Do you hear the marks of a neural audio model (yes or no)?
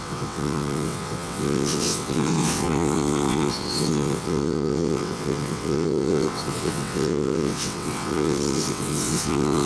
yes